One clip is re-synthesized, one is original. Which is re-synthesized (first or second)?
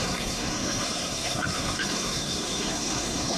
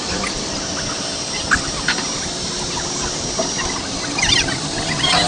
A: first